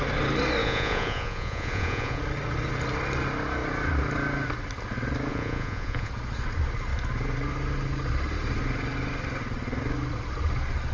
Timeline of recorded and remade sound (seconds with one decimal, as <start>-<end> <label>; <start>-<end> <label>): 0.0-0.6 recorded; 0.6-2.2 remade; 2.2-5.3 recorded; 5.3-6.1 remade; 6.1-10.9 recorded

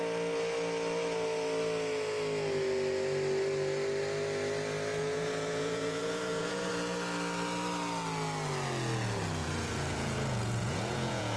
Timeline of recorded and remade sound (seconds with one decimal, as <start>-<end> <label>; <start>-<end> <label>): 0.0-5.0 recorded; 5.0-6.7 remade; 6.7-9.4 recorded; 9.4-11.4 remade

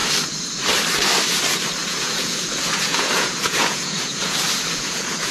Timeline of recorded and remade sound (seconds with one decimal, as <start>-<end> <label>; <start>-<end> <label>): 0.0-1.8 recorded; 1.8-5.3 remade

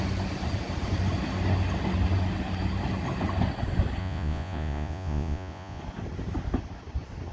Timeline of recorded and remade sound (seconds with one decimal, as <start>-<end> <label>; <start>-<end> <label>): 0.0-4.0 recorded; 4.0-5.8 remade; 5.8-7.3 recorded

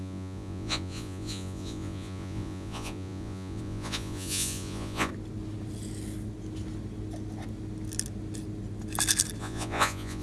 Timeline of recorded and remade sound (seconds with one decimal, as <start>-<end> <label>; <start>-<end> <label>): 0.0-5.1 remade; 5.1-9.4 recorded; 9.4-10.2 remade

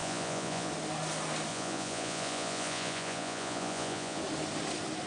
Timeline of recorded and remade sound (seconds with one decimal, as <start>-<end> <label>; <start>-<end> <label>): 0.0-0.7 remade; 0.7-1.5 recorded; 1.5-4.2 remade; 4.2-5.1 recorded

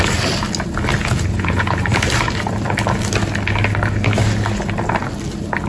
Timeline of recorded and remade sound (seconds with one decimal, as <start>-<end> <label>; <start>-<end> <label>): 0.0-1.0 recorded; 1.0-1.8 remade; 1.8-5.7 recorded

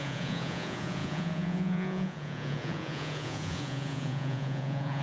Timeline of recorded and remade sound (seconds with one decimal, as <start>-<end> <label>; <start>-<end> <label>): 0.0-5.0 remade